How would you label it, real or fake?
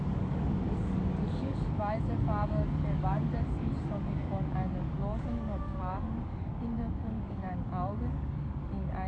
fake